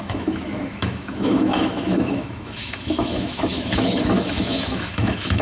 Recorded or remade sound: remade